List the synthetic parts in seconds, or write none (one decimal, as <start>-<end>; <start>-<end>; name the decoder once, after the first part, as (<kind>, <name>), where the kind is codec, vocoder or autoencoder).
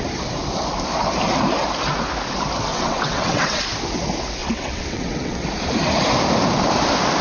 2.7-3.6 (vocoder, WaveNeXt); 4.4-5.4